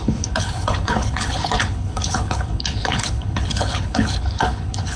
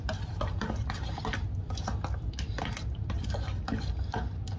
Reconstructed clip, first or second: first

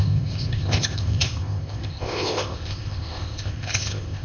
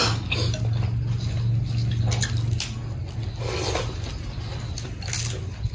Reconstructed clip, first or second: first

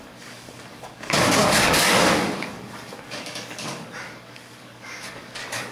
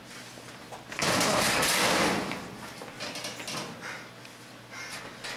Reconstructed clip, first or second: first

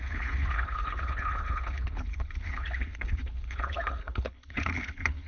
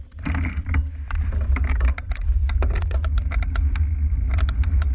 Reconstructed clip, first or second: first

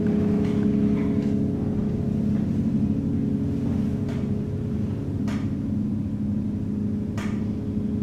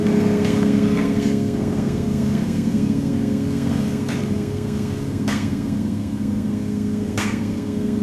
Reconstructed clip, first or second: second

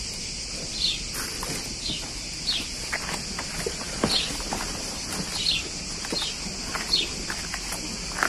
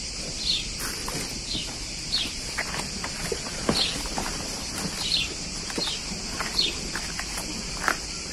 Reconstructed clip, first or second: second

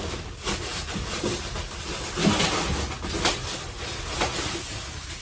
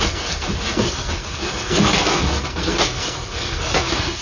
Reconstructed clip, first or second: second